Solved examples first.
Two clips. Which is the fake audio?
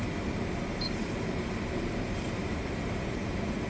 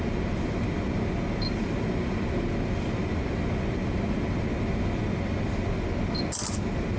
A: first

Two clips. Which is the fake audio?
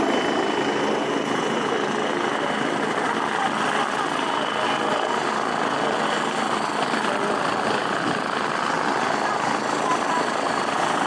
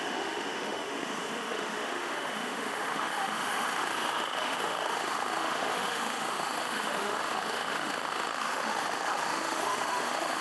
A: second